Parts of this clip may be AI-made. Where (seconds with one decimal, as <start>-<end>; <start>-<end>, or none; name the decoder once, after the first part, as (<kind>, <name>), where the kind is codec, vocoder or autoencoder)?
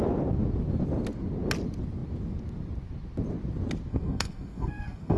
3.9-5.2 (codec, SNAC)